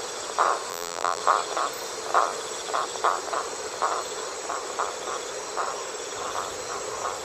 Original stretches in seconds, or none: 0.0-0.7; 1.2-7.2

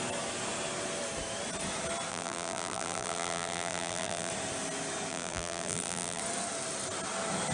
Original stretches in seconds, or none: 0.0-2.1; 4.3-5.1; 6.2-7.5

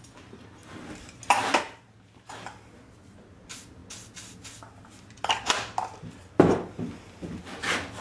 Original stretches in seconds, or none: 0.0-0.6; 1.2-1.6; 2.3-8.0

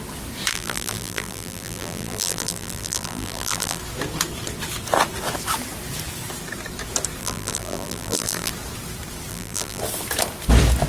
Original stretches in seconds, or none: 0.0-0.5; 3.8-7.2; 8.5-9.3; 9.8-10.9

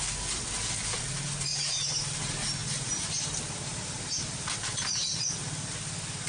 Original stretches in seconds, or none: 0.0-1.5; 2.2-2.6; 5.3-6.3

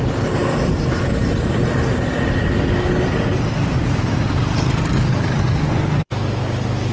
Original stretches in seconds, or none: 0.0-6.9